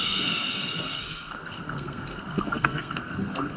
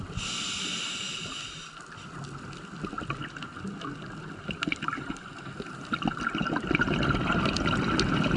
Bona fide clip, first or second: second